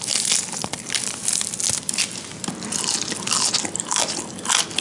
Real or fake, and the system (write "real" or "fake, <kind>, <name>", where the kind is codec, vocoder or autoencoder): real